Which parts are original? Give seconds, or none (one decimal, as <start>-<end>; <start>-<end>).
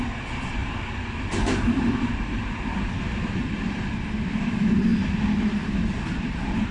4.9-6.0